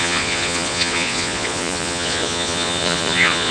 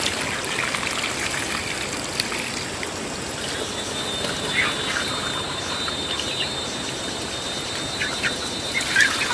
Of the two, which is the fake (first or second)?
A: first